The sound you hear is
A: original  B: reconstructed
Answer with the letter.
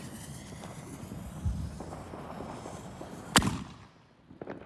A